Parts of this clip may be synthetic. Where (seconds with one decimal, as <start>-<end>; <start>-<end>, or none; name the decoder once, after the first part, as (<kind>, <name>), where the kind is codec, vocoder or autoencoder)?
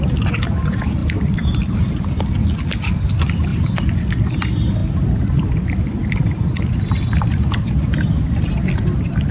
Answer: 1.0-2.2 (vocoder, BigVGAN v2); 4.8-8.3